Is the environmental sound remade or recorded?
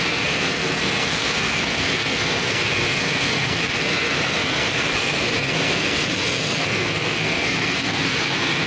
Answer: remade